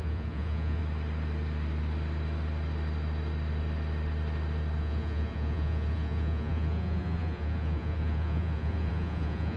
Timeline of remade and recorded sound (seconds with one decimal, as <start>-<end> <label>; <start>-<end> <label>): 0.0-0.8 remade; 0.8-4.8 recorded; 4.8-9.6 remade